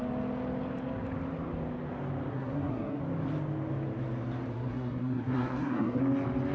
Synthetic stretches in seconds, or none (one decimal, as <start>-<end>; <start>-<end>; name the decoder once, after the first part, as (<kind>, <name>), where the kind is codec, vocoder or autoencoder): 2.3-3.0 (codec, SNAC); 4.5-6.0